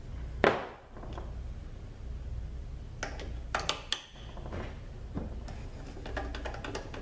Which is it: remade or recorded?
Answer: recorded